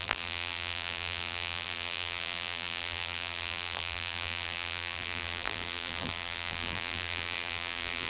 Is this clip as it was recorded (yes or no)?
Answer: no